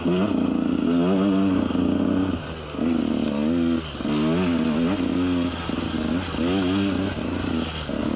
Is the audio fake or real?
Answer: real